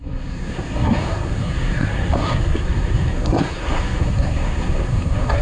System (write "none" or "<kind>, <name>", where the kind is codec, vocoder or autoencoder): codec, SNAC